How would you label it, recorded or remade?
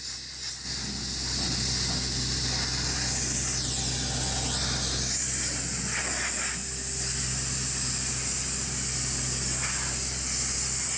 recorded